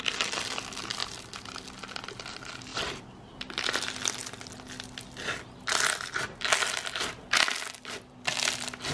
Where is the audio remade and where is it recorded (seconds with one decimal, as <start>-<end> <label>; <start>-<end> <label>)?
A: 0.0-8.9 recorded